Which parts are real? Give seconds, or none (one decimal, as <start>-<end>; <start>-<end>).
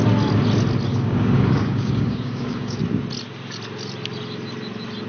0.0-0.9; 2.8-5.1